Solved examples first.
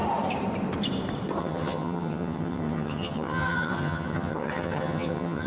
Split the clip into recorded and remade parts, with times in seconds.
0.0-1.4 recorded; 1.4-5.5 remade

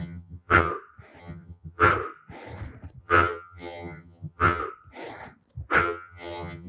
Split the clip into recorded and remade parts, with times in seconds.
0.0-0.7 remade; 0.7-1.2 recorded; 1.2-1.9 remade; 1.9-3.0 recorded; 3.0-4.6 remade; 4.6-5.8 recorded; 5.8-6.7 remade

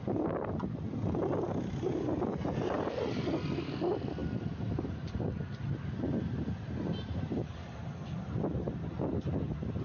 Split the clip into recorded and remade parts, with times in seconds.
0.0-9.8 recorded